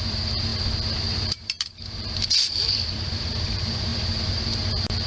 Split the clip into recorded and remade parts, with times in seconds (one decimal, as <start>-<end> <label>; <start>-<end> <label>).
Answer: 0.0-5.1 remade